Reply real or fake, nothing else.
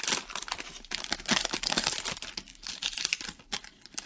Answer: real